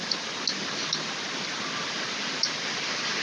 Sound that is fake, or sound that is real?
real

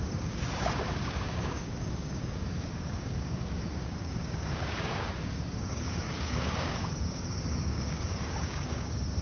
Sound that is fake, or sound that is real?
fake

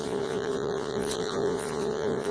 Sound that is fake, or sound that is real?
fake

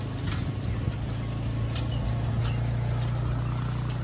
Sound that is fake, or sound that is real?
real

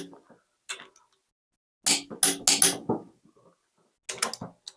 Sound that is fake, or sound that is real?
real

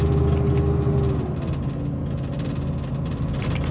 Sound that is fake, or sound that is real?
real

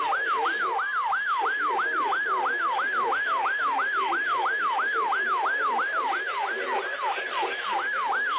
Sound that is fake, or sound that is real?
real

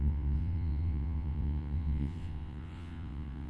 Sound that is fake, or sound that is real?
fake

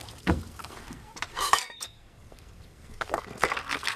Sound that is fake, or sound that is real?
fake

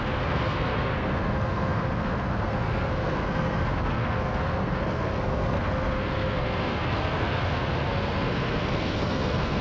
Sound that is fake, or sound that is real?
fake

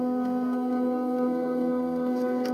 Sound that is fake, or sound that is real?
fake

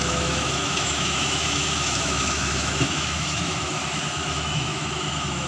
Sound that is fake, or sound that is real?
fake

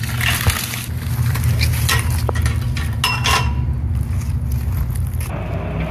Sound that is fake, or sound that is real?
real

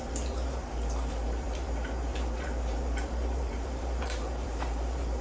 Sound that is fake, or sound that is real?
fake